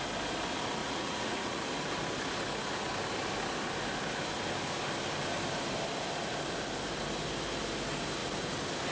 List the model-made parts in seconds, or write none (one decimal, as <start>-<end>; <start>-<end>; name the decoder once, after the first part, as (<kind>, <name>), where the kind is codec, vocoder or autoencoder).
0.8-1.6 (vocoder, Vocos)